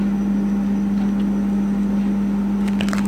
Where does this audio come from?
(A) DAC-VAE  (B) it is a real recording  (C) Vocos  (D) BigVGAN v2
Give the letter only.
B